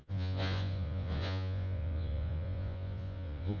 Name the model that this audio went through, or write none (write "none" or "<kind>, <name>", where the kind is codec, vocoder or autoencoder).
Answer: vocoder, Vocos